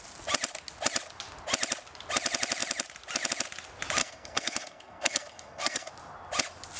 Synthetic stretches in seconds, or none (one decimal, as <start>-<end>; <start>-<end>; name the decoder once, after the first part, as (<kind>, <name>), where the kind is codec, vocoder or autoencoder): 4.0-5.9 (codec, SNAC)